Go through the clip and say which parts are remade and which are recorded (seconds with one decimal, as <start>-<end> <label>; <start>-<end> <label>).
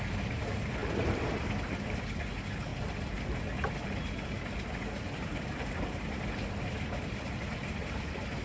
0.0-8.4 recorded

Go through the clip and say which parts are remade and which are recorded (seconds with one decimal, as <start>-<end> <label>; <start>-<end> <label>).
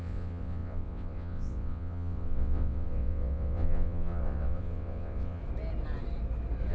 0.0-5.4 remade; 5.4-6.7 recorded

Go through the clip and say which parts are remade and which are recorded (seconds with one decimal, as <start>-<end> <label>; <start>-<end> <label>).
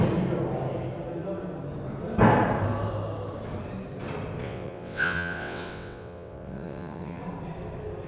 0.0-4.4 recorded; 4.4-7.2 remade; 7.2-8.1 recorded